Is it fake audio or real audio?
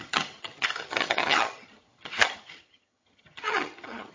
fake